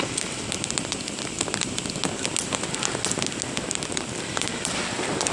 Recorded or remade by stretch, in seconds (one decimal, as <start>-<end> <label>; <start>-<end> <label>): 0.0-2.0 remade; 2.0-3.5 recorded; 3.5-5.3 remade